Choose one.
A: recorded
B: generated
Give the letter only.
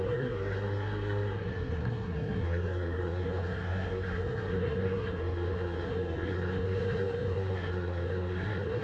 B